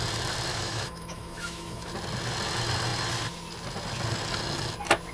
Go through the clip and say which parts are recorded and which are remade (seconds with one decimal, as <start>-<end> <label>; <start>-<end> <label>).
0.0-0.5 recorded; 0.5-1.9 remade; 1.9-5.1 recorded